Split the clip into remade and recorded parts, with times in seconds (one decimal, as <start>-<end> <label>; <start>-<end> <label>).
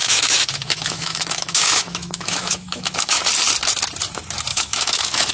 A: 0.0-3.2 remade; 3.2-4.5 recorded; 4.5-5.3 remade